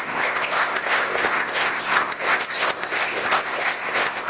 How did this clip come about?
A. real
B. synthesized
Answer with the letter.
B